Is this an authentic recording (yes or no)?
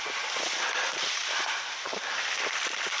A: yes